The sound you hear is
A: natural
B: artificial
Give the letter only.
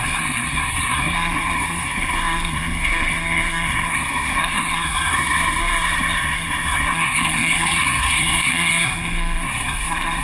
B